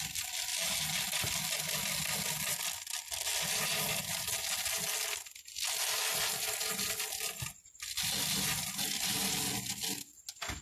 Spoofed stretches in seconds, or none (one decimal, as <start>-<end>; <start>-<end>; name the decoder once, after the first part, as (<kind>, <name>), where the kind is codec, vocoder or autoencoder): none

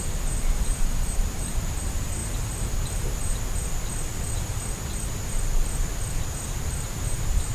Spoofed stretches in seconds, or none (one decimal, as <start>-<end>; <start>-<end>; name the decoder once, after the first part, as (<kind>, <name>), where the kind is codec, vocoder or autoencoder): 0.0-2.2 (vocoder, BigVGAN v2); 6.2-7.5

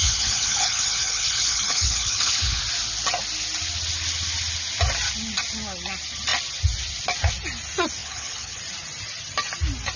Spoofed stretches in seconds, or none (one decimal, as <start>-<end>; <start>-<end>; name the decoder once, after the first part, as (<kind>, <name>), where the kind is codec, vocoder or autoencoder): 0.0-2.6 (codec, HILCodec); 8.0-8.6